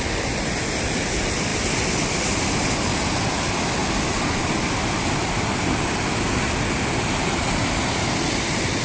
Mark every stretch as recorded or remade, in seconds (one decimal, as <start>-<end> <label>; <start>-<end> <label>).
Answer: 0.0-8.8 recorded